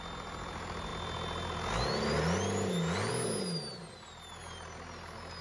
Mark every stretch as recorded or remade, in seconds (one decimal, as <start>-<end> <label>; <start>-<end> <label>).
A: 0.0-5.4 recorded